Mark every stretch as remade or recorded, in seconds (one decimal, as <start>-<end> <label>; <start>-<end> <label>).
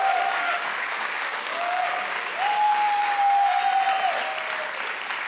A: 0.0-0.4 recorded; 0.4-3.6 remade; 3.6-5.3 recorded